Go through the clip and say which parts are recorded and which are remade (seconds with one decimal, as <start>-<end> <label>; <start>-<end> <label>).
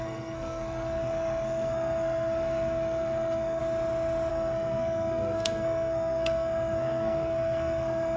0.0-3.6 remade; 3.6-4.3 recorded; 4.3-8.2 remade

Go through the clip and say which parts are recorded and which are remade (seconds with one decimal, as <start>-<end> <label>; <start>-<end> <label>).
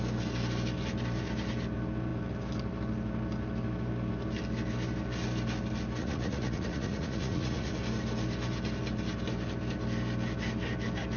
0.0-6.0 recorded; 6.0-7.7 remade; 7.7-11.2 recorded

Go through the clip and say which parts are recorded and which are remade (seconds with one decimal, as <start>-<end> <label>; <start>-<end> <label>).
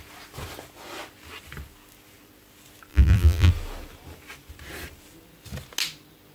0.0-2.9 recorded; 2.9-3.5 remade; 3.5-6.3 recorded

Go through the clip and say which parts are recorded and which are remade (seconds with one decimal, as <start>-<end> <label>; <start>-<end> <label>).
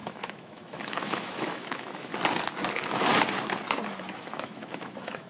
0.0-2.1 remade; 2.1-2.7 recorded; 2.7-3.1 remade; 3.1-4.2 recorded; 4.2-5.3 remade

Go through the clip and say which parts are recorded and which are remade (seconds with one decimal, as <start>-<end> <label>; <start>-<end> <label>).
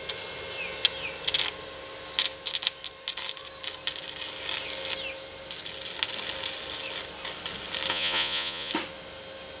0.0-7.9 recorded; 7.9-8.7 remade; 8.7-9.6 recorded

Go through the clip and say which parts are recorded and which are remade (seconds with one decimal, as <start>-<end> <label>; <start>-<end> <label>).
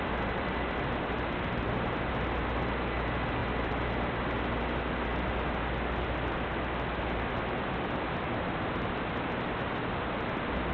0.0-10.7 recorded